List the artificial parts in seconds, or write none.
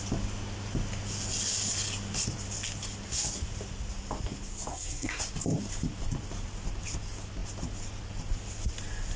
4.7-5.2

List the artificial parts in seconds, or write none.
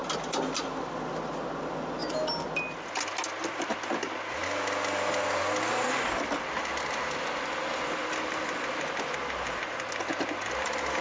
none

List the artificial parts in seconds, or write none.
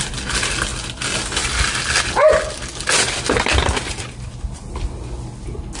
none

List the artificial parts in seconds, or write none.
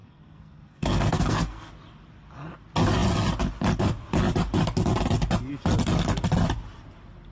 0.0-1.7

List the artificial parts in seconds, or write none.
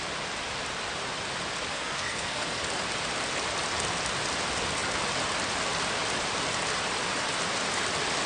1.7-2.6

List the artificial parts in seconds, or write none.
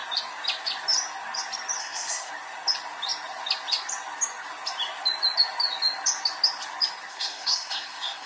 1.8-2.3; 7.1-8.3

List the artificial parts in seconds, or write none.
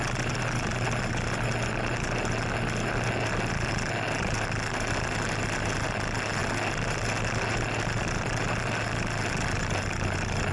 none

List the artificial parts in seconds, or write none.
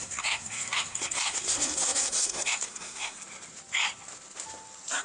0.0-3.2